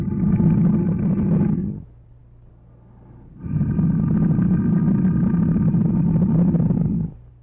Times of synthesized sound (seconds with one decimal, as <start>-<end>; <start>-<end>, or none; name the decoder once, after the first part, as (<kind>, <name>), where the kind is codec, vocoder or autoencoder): none